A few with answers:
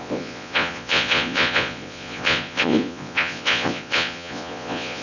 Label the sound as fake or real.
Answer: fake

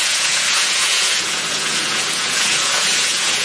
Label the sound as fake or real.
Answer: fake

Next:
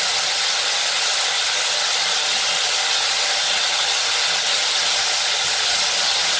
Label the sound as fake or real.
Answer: real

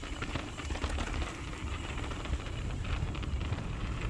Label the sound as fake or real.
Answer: real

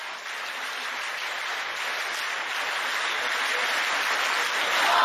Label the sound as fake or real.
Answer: real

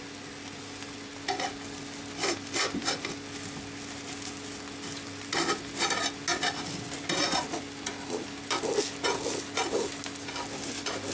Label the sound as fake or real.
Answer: real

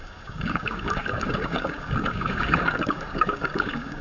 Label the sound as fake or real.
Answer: fake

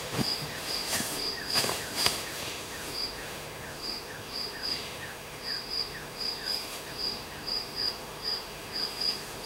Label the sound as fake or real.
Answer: fake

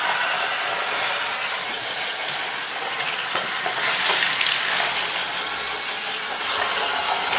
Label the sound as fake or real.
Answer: real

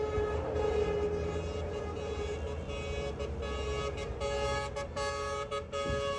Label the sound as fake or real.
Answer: real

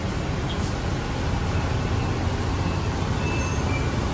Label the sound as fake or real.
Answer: real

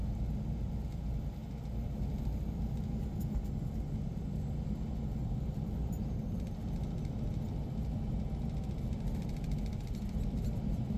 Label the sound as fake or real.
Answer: real